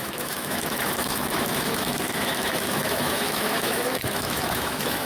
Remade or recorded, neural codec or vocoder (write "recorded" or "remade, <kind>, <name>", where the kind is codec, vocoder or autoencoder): remade, autoencoder, DAC-VAE